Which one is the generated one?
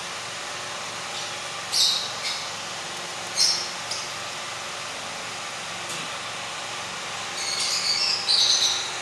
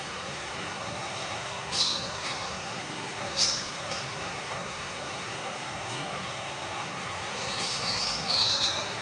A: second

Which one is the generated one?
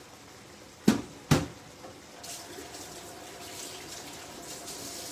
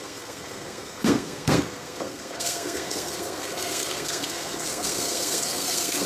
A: second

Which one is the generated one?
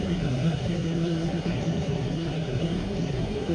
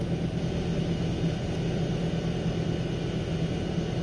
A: first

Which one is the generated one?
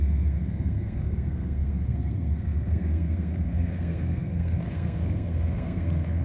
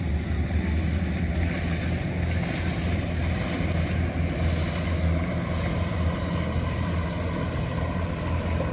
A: first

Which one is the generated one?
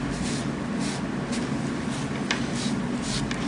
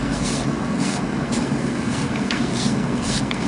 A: second